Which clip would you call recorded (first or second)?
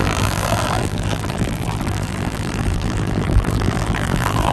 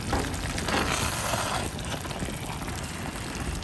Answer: second